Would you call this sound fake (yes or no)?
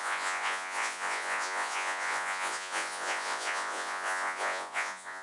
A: yes